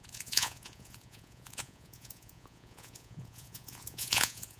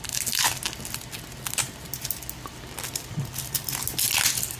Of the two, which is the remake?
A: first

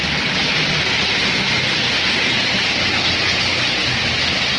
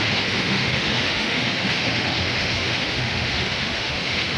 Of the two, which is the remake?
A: second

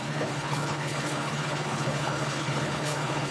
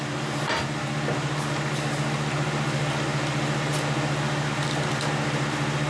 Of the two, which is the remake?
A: first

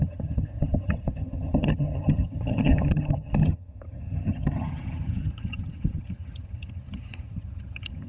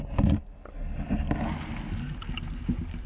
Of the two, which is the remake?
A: first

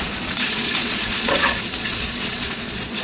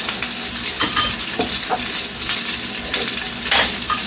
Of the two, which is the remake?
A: first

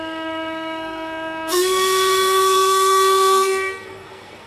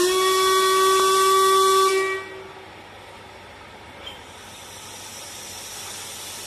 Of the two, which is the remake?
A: first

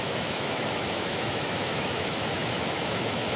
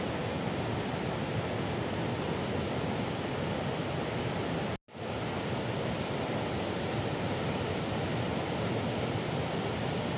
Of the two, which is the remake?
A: first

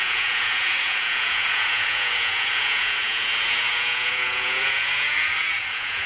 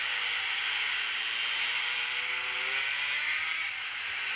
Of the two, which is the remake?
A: first